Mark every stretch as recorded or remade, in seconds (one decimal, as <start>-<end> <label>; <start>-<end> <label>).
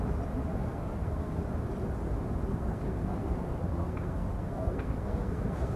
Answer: 0.0-0.5 recorded; 0.5-1.4 remade; 1.4-2.5 recorded; 2.5-5.8 remade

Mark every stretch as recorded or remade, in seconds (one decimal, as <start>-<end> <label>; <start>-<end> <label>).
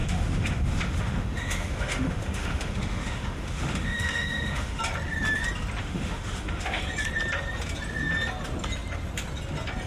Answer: 0.0-4.8 remade; 4.8-5.8 recorded; 5.8-6.8 remade; 6.8-9.9 recorded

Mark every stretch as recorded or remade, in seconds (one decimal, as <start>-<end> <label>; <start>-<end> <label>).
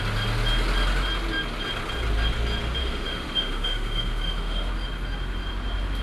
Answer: 0.0-2.8 recorded; 2.8-4.7 remade; 4.7-6.0 recorded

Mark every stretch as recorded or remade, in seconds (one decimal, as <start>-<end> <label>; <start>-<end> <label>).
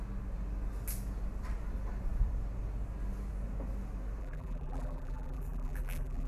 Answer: 0.0-4.2 recorded; 4.2-6.3 remade